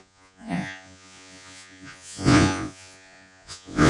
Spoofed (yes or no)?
yes